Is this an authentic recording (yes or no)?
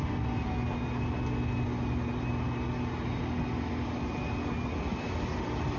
yes